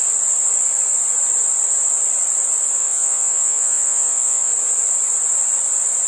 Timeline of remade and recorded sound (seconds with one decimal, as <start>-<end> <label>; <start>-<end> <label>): 0.0-2.8 recorded; 2.8-4.5 remade; 4.5-6.1 recorded